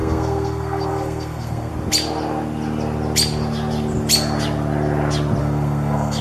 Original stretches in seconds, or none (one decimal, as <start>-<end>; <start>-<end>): 1.7-5.4

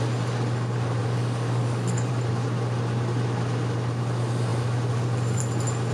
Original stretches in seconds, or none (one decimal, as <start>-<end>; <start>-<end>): 0.0-1.0; 2.1-5.9